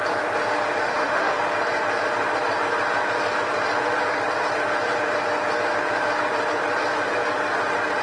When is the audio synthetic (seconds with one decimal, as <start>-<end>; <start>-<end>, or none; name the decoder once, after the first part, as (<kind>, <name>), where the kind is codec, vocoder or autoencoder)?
0.8-1.4 (autoencoder, DAC-VAE)